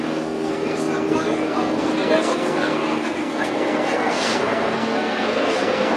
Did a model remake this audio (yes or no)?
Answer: yes